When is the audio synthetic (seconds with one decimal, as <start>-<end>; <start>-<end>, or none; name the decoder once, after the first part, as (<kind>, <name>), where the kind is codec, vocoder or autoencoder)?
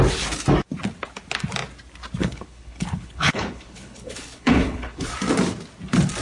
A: 2.2-5.1 (codec, HILCodec)